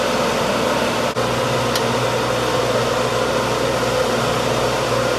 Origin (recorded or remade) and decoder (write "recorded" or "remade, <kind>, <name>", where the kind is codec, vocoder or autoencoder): recorded